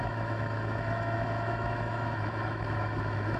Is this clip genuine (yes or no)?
no